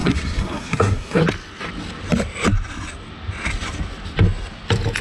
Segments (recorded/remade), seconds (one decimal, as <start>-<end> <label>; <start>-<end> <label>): 0.0-1.2 remade; 1.2-5.0 recorded